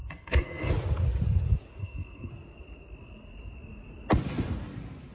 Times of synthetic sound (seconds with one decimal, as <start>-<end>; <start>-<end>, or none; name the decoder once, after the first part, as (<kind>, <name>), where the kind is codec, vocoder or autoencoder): 0.0-0.7 (codec, SNAC); 1.8-2.3